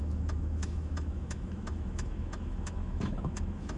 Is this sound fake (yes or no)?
yes